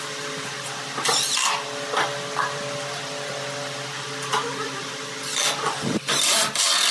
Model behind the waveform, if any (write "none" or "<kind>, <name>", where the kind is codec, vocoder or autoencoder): none